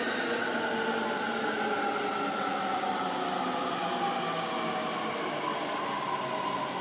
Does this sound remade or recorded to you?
recorded